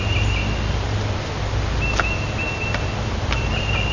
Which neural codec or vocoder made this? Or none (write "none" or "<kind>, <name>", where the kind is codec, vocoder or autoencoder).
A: none